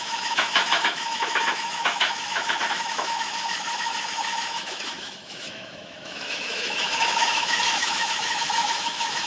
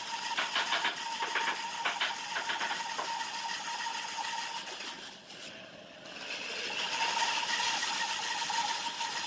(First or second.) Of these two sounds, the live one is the second